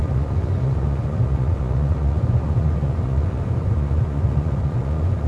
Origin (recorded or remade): remade